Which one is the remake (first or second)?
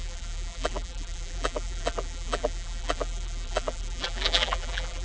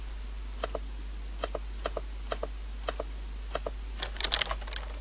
first